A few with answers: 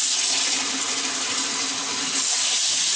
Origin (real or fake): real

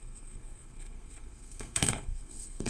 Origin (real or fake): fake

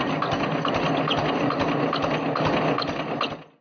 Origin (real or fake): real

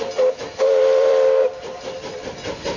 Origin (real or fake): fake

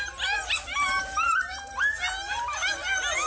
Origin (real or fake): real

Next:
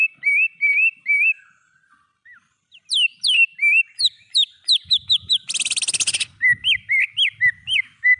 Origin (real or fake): real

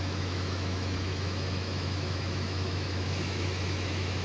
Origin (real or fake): fake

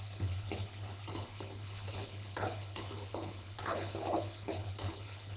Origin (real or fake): fake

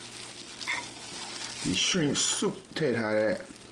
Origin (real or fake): real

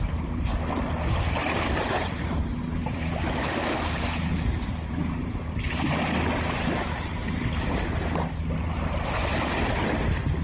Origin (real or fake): real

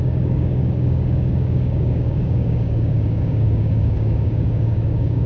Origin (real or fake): fake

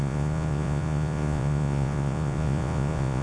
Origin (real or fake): fake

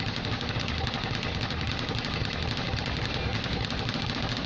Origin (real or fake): real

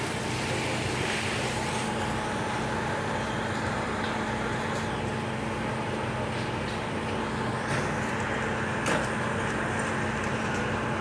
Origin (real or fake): real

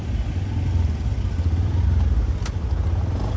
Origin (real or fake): real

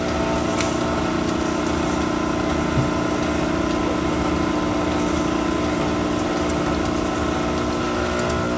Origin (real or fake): real